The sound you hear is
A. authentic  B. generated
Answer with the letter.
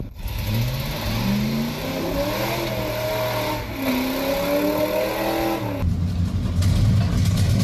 A